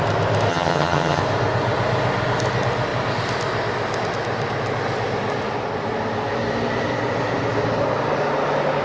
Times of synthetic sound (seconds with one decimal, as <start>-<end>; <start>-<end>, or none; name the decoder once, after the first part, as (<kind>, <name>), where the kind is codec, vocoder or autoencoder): 0.5-1.2 (vocoder, HiFi-GAN)